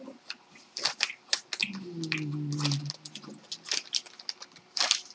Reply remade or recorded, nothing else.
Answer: recorded